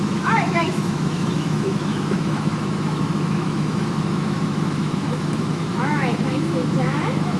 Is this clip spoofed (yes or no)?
yes